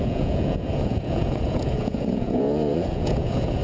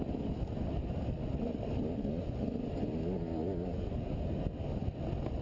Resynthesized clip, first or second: first